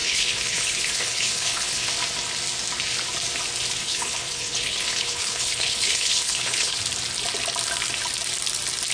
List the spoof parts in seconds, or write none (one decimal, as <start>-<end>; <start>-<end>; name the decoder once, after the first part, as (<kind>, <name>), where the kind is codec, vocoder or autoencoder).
0.0-1.9 (codec, HILCodec); 3.8-6.8